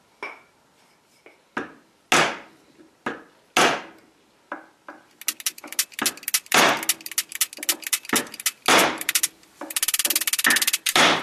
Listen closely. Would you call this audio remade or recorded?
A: recorded